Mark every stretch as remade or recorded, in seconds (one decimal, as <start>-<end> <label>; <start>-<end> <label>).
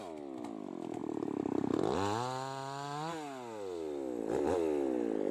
0.0-5.3 recorded